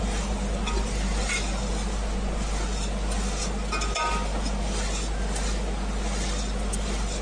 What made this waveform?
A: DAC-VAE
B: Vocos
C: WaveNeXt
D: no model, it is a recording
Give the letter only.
D